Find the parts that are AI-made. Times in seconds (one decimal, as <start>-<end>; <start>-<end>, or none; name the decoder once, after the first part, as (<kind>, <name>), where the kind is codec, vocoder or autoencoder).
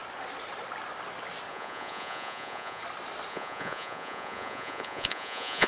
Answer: 1.5-2.8 (vocoder, Vocos); 3.3-5.7